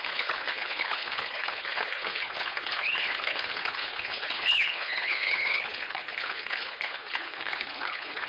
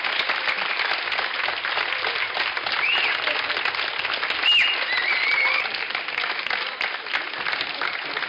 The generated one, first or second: first